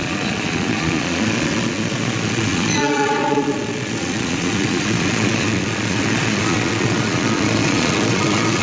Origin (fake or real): fake